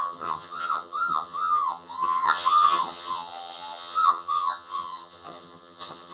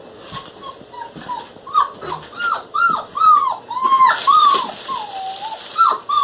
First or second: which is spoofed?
first